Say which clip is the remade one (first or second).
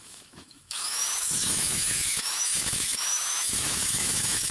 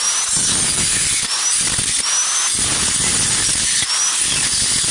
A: first